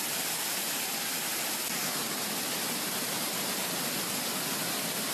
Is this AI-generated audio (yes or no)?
no